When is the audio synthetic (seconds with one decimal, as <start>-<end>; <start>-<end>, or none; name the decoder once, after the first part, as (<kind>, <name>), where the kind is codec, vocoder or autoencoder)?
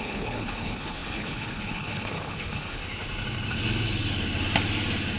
0.0-2.8 (codec, HILCodec)